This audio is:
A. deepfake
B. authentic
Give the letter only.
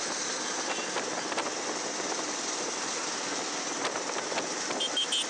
B